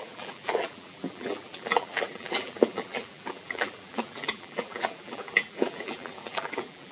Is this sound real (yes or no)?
no